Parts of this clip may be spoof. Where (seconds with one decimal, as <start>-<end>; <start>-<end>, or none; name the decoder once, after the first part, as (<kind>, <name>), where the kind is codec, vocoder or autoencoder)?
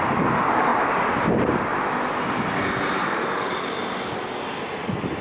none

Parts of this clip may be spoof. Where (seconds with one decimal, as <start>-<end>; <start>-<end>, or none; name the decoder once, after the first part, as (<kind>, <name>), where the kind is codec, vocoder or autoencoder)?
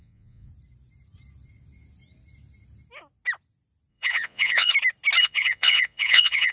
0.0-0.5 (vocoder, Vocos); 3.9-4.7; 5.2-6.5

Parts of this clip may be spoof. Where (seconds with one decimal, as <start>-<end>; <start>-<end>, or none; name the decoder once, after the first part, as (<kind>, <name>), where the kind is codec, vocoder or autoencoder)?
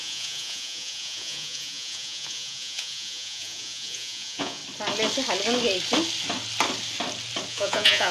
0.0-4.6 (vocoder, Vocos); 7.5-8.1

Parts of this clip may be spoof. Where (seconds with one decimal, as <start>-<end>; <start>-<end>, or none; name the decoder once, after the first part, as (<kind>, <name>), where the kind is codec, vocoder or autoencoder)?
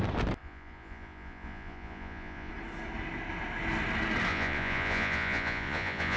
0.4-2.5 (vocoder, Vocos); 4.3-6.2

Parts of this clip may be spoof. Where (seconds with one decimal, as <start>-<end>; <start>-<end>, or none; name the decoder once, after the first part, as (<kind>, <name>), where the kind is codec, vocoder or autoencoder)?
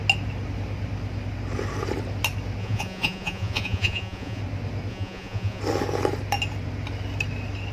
2.6-4.4 (vocoder, Vocos); 4.9-5.6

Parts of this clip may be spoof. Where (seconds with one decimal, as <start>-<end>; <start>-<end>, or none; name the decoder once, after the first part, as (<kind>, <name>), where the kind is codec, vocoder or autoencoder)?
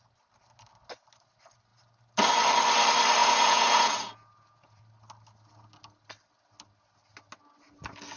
3.2-4.8 (vocoder, Vocos)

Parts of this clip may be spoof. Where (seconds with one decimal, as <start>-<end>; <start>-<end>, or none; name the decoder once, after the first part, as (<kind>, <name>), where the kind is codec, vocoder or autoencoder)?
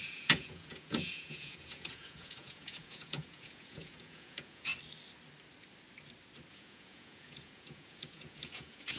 0.0-4.7 (vocoder, Vocos); 6.5-9.0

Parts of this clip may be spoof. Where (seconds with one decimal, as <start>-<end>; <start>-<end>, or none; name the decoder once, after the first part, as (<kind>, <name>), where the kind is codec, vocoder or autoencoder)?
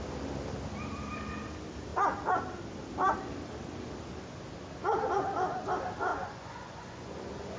6.1-7.6 (vocoder, Vocos)